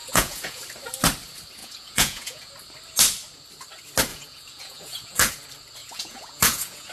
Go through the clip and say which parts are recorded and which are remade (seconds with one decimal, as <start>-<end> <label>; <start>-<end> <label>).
0.0-0.6 remade; 0.6-1.6 recorded; 1.6-2.5 remade; 2.5-4.1 recorded; 4.1-5.3 remade; 5.3-5.8 recorded; 5.8-6.9 remade